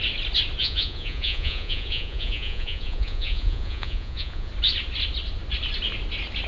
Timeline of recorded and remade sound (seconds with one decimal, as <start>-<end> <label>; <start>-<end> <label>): 0.0-0.6 recorded; 0.6-4.5 remade; 4.5-6.5 recorded